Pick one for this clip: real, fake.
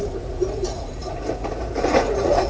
fake